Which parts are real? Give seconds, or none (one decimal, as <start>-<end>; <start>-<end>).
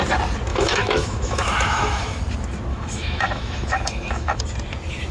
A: 0.0-0.5; 2.2-2.7; 4.4-5.1